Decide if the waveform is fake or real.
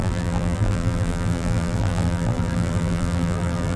fake